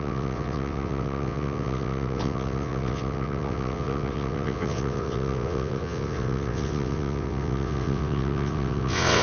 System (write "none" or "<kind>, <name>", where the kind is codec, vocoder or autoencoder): vocoder, WaveNeXt